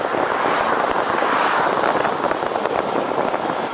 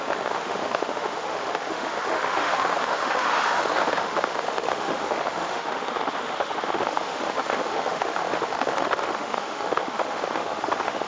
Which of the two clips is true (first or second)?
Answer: first